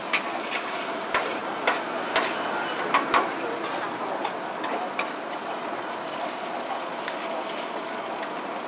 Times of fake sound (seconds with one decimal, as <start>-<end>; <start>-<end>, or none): none